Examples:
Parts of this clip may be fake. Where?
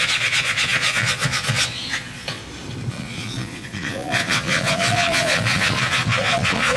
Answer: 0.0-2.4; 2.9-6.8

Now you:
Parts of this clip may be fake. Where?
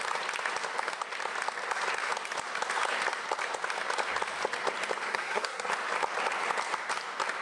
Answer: 5.1-5.7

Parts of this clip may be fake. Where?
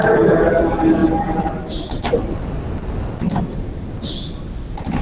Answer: none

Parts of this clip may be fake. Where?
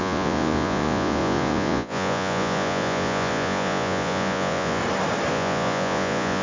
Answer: 0.0-4.8; 5.3-6.4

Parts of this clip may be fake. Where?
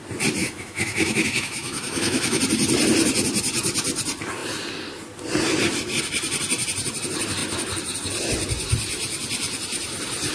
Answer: 0.4-2.4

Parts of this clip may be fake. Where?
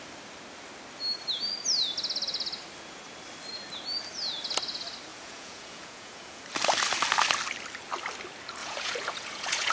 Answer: 5.1-6.4; 8.6-9.7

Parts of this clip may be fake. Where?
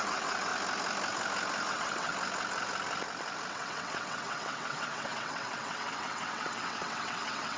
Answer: 0.0-0.5; 1.7-2.1; 3.5-7.6